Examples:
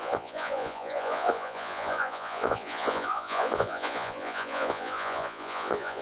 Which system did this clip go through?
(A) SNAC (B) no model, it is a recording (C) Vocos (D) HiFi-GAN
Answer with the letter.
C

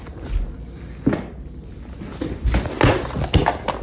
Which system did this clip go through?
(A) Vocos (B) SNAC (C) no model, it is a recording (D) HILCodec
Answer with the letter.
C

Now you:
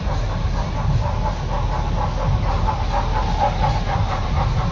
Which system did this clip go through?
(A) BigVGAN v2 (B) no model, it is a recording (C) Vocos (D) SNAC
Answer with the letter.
B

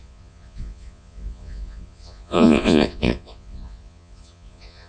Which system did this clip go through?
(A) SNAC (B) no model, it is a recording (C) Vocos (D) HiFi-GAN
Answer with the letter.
C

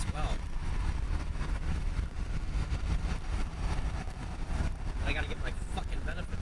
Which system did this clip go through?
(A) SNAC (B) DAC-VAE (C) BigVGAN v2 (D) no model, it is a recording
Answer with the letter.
C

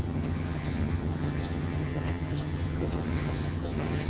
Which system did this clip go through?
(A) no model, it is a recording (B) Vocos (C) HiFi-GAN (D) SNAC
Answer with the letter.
C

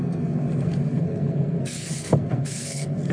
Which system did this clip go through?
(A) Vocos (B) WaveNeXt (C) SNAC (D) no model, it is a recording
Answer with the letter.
C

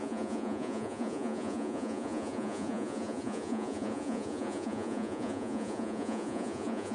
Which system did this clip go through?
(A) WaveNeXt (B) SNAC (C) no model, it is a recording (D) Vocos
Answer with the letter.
D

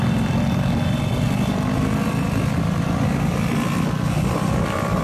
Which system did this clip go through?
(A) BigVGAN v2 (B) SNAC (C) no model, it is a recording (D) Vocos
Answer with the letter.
C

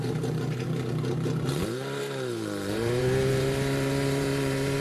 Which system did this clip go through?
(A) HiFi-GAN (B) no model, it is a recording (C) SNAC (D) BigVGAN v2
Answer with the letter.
D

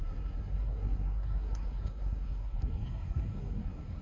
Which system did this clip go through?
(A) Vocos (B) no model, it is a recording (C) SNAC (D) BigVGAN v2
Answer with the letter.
C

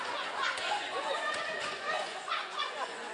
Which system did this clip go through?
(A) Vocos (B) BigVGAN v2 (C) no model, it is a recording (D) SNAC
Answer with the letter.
A